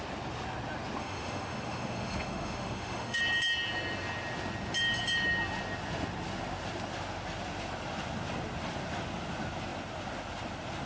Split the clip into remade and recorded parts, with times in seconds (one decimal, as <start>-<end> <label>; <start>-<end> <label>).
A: 0.0-1.0 recorded; 1.0-3.2 remade; 3.2-10.9 recorded